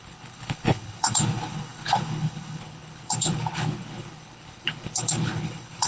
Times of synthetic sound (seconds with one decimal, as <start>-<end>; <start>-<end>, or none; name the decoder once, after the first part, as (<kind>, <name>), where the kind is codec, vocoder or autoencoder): 0.0-5.9 (codec, HILCodec)